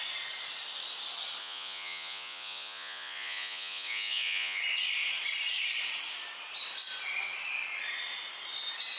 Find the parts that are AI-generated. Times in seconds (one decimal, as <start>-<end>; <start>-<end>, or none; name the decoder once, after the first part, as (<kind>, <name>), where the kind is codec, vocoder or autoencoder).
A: 1.4-4.6 (vocoder, Vocos)